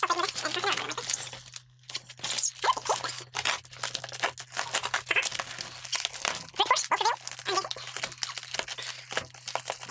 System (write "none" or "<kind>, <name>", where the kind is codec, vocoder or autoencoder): none